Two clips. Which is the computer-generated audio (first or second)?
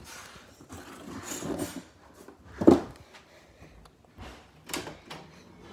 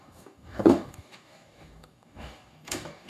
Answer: second